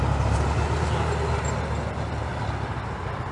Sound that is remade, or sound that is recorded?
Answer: recorded